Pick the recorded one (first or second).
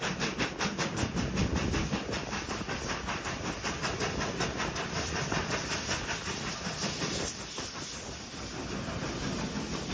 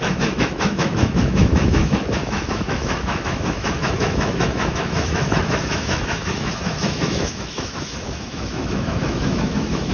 first